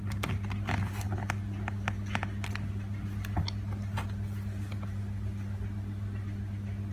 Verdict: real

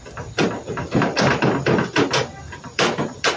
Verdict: fake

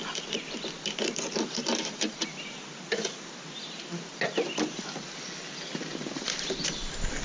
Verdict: real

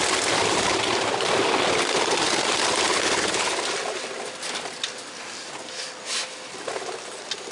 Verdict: real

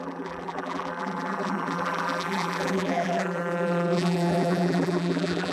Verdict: fake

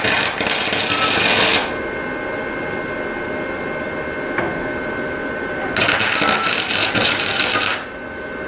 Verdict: real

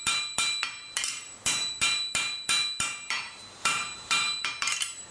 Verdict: fake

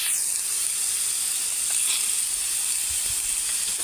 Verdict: real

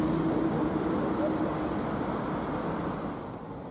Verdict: real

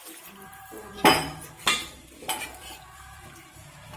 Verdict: fake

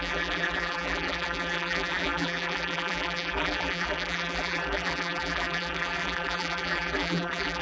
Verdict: fake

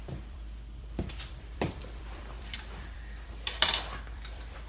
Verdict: fake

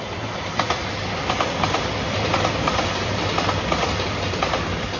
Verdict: fake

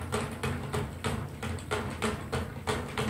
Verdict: real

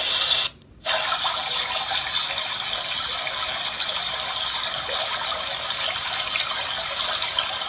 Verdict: real